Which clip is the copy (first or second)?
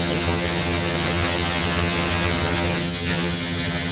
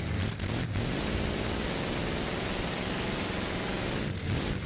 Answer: first